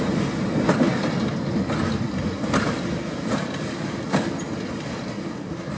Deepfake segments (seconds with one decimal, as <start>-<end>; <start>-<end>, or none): none